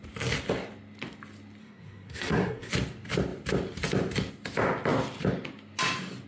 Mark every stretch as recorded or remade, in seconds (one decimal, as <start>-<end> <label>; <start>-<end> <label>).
0.0-1.6 recorded; 1.6-2.7 remade; 2.7-6.3 recorded